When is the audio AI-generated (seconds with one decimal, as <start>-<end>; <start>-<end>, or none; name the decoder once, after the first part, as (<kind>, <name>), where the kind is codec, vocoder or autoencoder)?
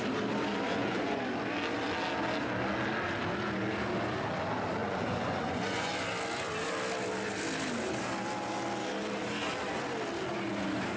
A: 0.7-1.2 (vocoder, Vocos); 4.8-5.9